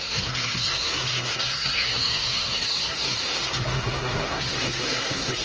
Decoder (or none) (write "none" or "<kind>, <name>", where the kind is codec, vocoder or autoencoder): codec, SNAC